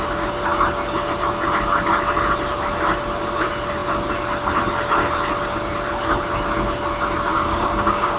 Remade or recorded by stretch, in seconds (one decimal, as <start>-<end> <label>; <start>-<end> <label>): 0.0-7.3 recorded; 7.3-8.2 remade